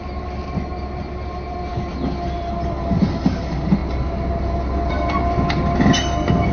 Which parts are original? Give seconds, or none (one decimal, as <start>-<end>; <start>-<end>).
0.0-6.5